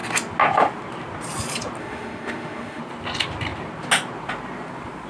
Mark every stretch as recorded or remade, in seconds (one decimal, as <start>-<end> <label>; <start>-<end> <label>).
0.0-1.8 recorded; 1.8-2.8 remade; 2.8-5.1 recorded